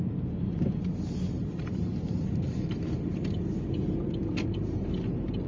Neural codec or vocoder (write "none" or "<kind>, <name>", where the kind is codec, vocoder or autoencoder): vocoder, BigVGAN v2